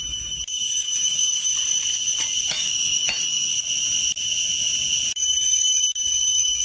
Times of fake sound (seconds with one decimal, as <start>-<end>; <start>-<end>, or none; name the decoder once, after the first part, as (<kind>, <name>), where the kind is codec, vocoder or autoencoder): 0.0-1.5 (autoencoder, DAC-VAE); 2.5-3.5; 5.1-6.6